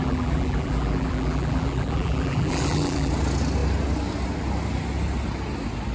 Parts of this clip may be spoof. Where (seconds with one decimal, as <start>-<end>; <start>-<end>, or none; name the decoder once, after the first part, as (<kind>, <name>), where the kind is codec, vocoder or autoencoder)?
0.0-3.1 (vocoder, BigVGAN v2)